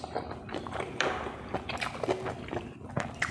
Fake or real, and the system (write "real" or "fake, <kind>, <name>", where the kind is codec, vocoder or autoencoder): fake, vocoder, BigVGAN v2